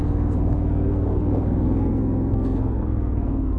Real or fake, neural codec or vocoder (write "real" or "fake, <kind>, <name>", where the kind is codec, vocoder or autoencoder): fake, codec, SNAC